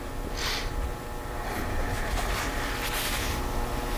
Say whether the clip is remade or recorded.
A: recorded